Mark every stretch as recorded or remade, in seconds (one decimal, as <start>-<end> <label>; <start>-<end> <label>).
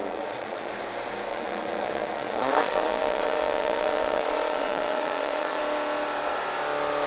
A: 0.0-0.7 remade; 0.7-1.3 recorded; 1.3-5.6 remade; 5.6-7.1 recorded